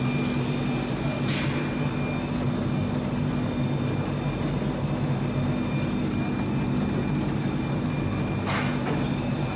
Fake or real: real